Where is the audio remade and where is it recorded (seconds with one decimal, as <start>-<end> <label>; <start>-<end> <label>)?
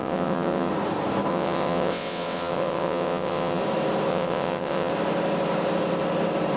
0.0-0.7 remade; 0.7-1.3 recorded; 1.3-3.6 remade; 3.6-4.1 recorded; 4.1-4.9 remade; 4.9-6.6 recorded